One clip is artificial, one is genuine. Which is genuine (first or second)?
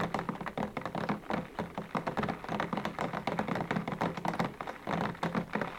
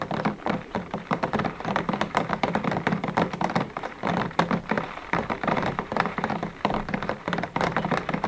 first